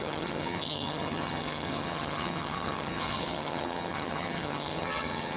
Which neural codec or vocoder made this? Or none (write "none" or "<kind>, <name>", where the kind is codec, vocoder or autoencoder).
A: vocoder, HiFi-GAN